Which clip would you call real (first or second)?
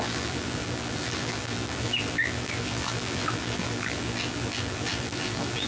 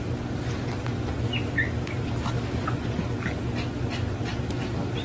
second